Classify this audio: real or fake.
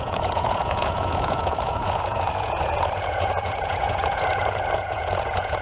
fake